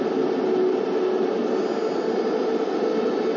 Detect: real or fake real